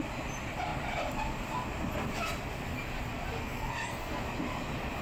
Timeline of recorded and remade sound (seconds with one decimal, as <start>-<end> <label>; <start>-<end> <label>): 0.0-3.4 recorded; 3.4-4.2 remade; 4.2-5.0 recorded